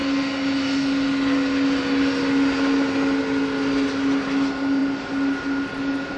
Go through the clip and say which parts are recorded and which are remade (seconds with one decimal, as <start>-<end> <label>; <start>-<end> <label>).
0.0-6.2 recorded